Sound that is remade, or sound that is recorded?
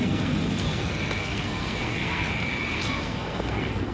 remade